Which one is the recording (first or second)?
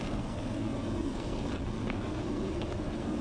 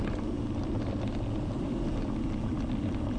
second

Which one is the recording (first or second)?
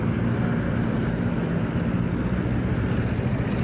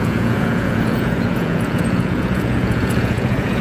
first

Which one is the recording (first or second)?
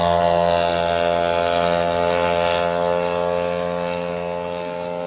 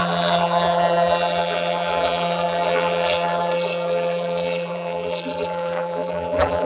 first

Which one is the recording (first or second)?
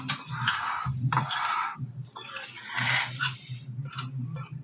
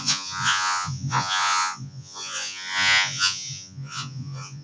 first